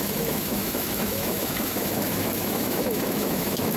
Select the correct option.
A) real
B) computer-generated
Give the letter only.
B